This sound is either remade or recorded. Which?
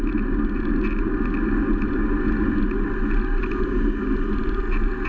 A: recorded